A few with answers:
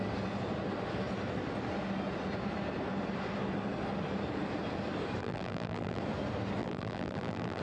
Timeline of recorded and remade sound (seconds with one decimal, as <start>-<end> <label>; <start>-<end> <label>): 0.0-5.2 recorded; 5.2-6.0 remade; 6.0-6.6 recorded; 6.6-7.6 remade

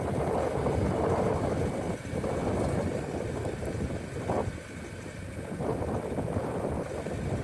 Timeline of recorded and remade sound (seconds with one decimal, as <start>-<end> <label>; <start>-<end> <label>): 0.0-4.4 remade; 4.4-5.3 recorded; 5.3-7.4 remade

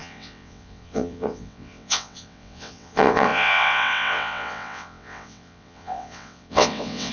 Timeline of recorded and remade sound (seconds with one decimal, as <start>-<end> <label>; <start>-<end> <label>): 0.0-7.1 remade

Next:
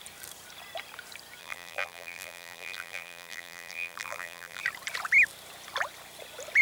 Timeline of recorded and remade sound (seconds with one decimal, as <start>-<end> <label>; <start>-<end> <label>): 0.0-1.4 recorded; 1.4-4.6 remade; 4.6-6.6 recorded

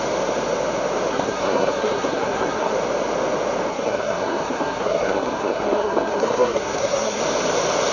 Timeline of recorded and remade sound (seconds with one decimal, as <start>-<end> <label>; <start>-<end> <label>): 0.0-1.1 recorded; 1.1-2.7 remade; 2.7-3.7 recorded; 3.7-7.2 remade; 7.2-7.9 recorded

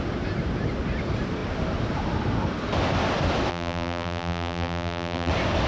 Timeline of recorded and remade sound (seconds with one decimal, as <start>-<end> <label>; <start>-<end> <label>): 0.0-3.5 recorded; 3.5-5.3 remade; 5.3-5.7 recorded

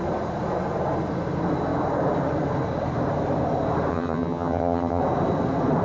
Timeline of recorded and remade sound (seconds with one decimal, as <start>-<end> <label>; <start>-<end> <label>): 0.0-3.9 recorded; 3.9-5.0 remade; 5.0-5.8 recorded